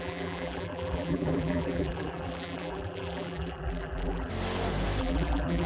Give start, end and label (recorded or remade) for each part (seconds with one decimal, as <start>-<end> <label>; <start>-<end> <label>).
0.0-4.3 remade; 4.3-5.0 recorded; 5.0-5.7 remade